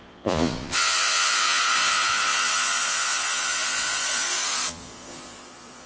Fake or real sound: fake